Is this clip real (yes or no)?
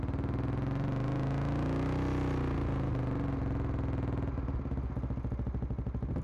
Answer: yes